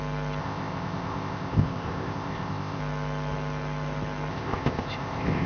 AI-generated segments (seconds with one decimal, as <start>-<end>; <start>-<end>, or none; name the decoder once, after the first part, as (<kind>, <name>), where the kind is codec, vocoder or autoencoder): 0.4-2.8 (codec, ZipCodec); 4.3-5.5